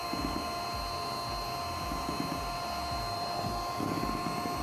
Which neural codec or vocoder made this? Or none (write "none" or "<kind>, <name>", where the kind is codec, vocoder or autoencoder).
none